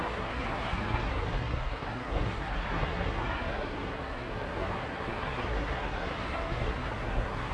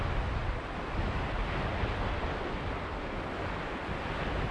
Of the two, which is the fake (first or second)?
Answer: first